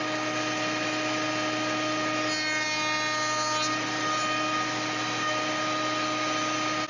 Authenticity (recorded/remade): recorded